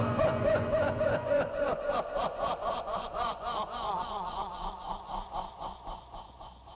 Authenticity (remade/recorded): remade